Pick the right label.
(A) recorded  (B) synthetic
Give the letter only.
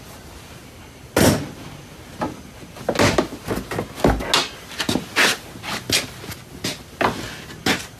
A